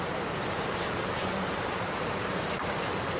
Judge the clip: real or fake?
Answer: fake